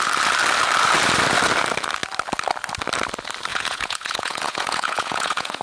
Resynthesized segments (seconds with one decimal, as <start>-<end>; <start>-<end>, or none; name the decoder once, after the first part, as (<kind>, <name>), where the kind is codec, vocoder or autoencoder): 3.5-5.6 (vocoder, Vocos)